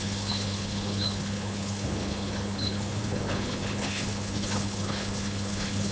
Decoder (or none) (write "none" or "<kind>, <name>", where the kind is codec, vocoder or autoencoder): codec, HILCodec